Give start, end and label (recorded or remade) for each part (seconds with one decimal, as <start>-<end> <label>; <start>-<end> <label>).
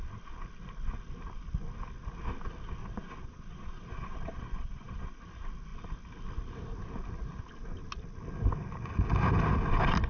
0.0-2.8 recorded; 2.8-5.2 remade; 5.2-10.1 recorded